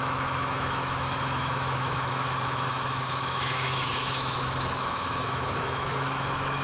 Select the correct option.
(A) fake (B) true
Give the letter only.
A